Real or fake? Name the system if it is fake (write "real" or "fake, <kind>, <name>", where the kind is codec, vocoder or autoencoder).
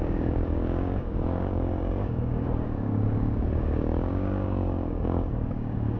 fake, codec, DAC